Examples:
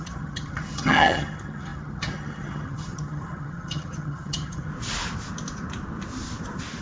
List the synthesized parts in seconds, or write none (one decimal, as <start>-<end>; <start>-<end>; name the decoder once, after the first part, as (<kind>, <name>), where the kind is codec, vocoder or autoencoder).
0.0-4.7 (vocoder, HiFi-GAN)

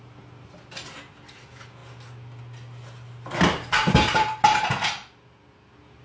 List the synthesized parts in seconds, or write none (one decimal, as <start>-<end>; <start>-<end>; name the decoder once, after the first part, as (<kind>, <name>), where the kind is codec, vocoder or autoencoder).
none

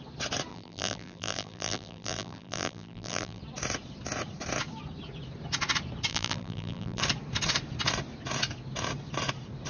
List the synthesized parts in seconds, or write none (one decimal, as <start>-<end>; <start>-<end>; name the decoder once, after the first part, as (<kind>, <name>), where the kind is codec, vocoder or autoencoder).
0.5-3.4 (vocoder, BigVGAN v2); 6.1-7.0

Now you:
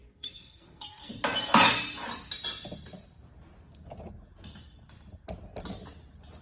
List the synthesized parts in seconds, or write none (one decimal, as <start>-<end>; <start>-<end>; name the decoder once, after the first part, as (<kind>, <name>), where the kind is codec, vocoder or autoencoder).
0.0-1.1 (codec, SNAC)